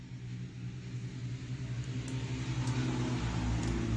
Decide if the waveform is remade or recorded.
recorded